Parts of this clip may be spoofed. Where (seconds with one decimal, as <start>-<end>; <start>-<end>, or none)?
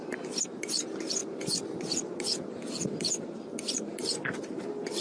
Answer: none